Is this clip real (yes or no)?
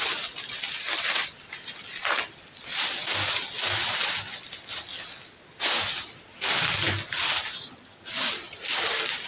yes